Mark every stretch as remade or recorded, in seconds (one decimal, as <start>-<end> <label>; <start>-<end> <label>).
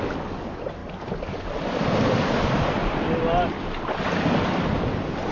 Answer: 0.0-5.3 recorded